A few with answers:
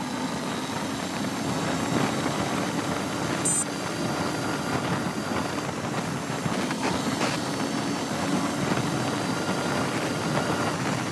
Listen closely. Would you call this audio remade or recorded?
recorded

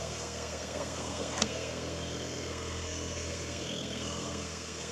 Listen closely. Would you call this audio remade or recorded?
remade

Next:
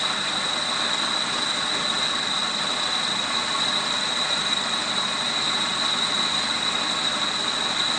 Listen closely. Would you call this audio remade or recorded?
recorded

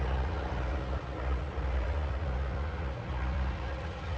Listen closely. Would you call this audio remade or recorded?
remade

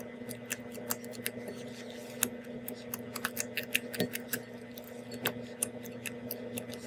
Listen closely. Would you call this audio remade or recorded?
recorded